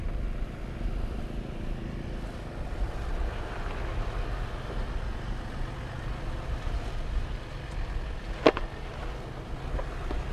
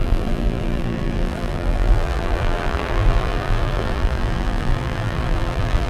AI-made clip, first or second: second